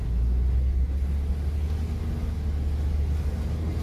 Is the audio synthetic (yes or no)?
no